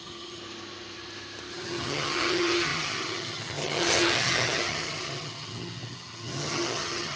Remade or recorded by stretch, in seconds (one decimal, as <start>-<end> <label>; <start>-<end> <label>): 0.0-0.4 remade; 0.4-1.5 recorded; 1.5-7.2 remade